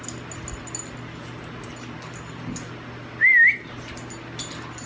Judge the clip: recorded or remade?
recorded